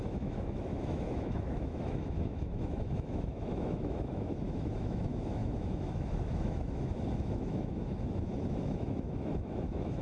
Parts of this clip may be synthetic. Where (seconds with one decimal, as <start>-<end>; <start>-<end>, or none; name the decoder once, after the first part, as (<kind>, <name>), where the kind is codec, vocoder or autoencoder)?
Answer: 0.0-10.0 (autoencoder, DAC-VAE)